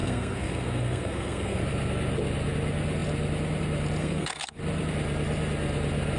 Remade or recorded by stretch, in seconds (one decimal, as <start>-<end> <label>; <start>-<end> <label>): 0.0-1.6 remade; 1.6-4.0 recorded; 4.0-4.6 remade; 4.6-6.2 recorded

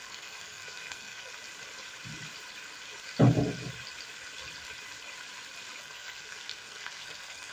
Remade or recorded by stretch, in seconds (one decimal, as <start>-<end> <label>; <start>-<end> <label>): 0.0-1.3 remade; 1.3-5.8 recorded; 5.8-7.5 remade

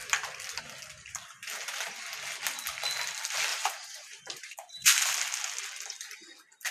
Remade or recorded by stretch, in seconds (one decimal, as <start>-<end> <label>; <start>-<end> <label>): 0.0-3.5 recorded; 3.5-6.1 remade; 6.1-6.7 recorded

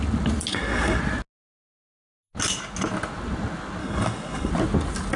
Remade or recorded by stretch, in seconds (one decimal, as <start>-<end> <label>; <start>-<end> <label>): 0.0-0.5 recorded; 0.5-1.0 remade; 1.0-3.8 recorded; 3.8-4.5 remade; 4.5-5.2 recorded

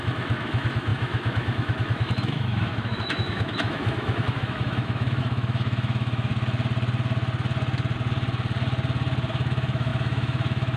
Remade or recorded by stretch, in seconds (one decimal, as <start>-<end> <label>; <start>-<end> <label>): 0.0-6.3 remade; 6.3-9.3 recorded; 9.3-10.8 remade

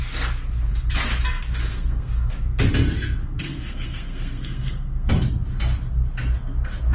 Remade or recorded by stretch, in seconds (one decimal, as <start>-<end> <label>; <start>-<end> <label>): 0.0-1.7 recorded; 1.7-2.7 remade; 2.7-3.2 recorded; 3.2-5.1 remade; 5.1-6.9 recorded

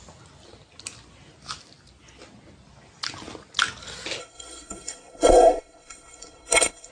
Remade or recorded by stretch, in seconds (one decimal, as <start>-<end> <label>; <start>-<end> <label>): 0.0-4.2 recorded; 4.2-6.9 remade